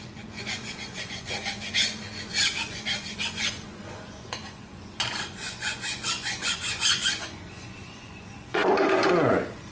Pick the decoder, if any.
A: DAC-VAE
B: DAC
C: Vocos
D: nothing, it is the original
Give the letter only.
C